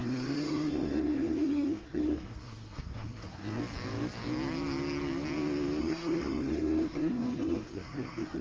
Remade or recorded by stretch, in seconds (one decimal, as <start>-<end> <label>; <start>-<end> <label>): 0.0-3.6 remade; 3.6-5.8 recorded; 5.8-8.4 remade